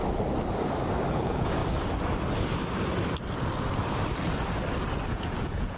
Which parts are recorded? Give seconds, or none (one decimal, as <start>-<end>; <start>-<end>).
0.0-1.1; 1.6-5.1